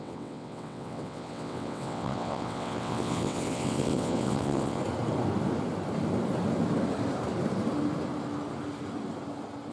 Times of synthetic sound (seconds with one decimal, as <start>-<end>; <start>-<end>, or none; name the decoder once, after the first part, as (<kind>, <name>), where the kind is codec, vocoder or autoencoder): 0.0-4.8 (vocoder, WaveNeXt)